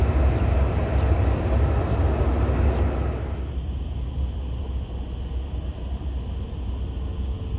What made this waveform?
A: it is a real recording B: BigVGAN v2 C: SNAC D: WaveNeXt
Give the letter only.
A